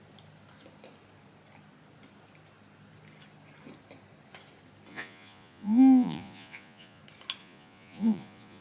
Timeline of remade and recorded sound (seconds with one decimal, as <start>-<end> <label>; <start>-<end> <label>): 0.0-4.9 recorded; 4.9-7.0 remade; 7.0-7.4 recorded; 7.4-8.6 remade